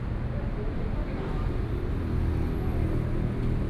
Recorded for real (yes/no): yes